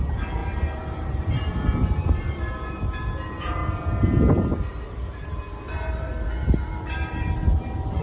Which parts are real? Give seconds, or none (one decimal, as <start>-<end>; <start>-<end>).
3.6-4.7